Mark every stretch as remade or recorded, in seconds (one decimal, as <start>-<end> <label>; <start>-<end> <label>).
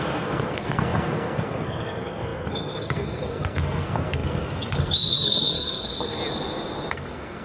0.0-6.2 remade; 6.2-6.9 recorded; 6.9-7.4 remade